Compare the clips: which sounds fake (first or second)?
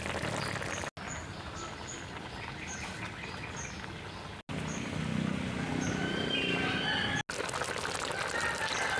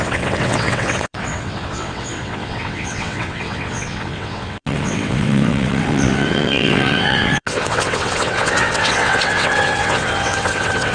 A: second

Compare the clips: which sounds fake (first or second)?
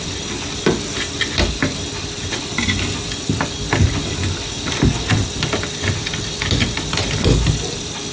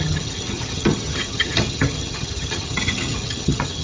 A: second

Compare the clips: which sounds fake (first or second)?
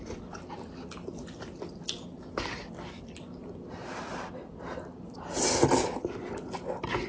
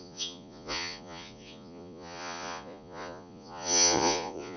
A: second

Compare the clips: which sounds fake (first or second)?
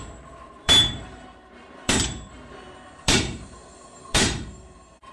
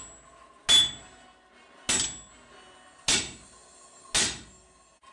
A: first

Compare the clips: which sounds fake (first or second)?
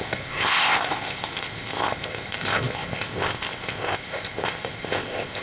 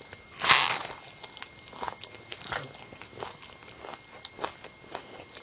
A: first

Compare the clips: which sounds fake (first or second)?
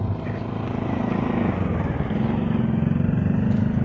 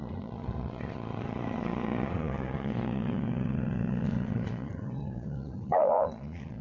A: second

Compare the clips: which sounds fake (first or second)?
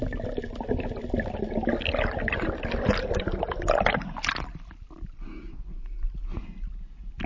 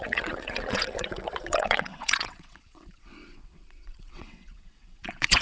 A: second